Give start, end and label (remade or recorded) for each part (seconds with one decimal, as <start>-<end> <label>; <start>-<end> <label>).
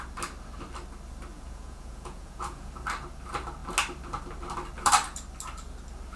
0.0-1.3 recorded; 1.3-2.7 remade; 2.7-6.2 recorded